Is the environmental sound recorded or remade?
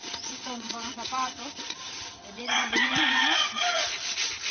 remade